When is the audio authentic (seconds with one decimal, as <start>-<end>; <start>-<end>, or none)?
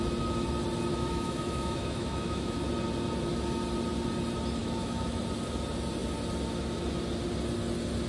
0.0-0.9; 2.7-4.6; 5.2-8.1